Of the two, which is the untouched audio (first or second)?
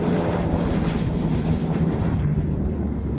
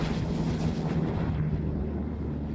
second